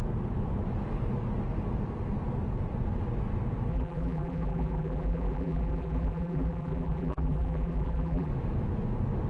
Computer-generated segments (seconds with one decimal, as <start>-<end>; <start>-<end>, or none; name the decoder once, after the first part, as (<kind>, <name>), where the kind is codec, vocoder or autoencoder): 3.7-8.3 (vocoder, BigVGAN v2)